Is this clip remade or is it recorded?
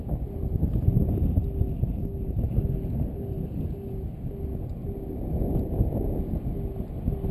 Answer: recorded